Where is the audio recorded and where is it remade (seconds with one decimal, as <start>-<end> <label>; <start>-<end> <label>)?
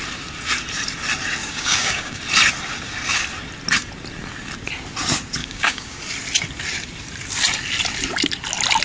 0.0-1.4 recorded; 1.4-2.2 remade; 2.2-5.4 recorded; 5.4-6.0 remade; 6.0-8.8 recorded